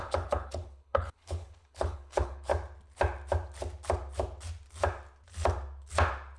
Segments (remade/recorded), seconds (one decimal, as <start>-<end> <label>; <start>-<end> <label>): 0.0-2.5 remade; 2.5-6.4 recorded